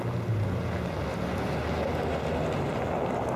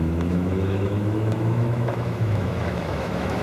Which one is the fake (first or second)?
second